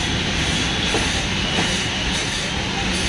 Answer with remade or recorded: recorded